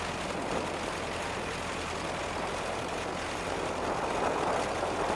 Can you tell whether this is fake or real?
real